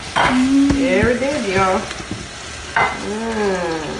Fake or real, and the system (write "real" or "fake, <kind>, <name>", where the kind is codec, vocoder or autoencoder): real